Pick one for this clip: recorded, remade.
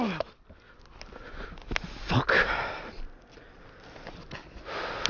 recorded